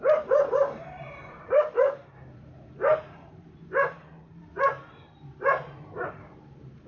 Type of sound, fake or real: fake